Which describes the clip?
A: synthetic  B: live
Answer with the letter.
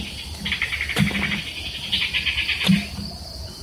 B